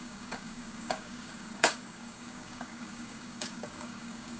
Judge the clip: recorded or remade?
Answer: remade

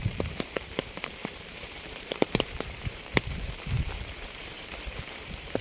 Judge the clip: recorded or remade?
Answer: remade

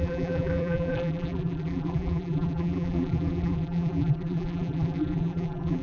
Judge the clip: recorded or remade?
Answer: remade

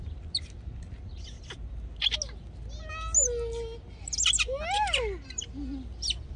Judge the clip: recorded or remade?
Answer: recorded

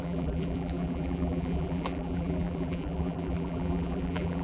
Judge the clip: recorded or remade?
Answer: remade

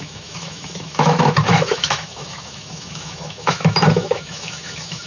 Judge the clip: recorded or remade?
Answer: remade